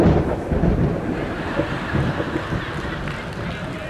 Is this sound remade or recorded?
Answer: recorded